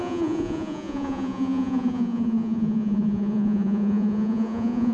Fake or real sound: fake